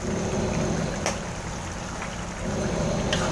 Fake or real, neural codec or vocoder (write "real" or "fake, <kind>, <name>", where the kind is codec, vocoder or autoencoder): real